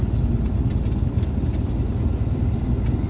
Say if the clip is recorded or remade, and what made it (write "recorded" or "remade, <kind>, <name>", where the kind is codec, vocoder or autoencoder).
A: recorded